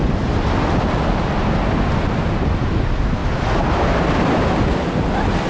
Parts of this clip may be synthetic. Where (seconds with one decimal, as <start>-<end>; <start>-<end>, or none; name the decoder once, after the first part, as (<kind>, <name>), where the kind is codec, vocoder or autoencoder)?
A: none